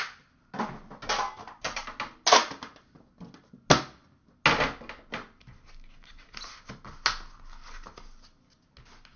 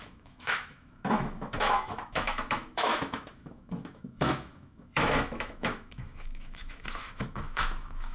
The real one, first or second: first